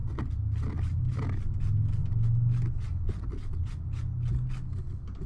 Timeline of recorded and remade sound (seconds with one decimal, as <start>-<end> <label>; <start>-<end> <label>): 0.0-5.3 recorded